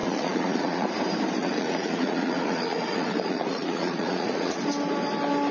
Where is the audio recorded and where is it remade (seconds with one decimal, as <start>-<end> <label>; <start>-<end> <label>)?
0.0-0.9 remade; 0.9-1.4 recorded; 1.4-4.6 remade; 4.6-5.5 recorded